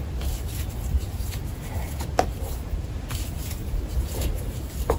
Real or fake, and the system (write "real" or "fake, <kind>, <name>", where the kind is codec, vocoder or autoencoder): real